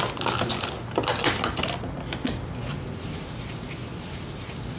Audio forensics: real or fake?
real